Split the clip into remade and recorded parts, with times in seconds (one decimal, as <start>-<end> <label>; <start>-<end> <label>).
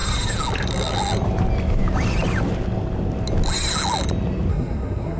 0.0-4.5 recorded; 4.5-5.2 remade